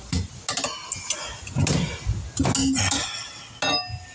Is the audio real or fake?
real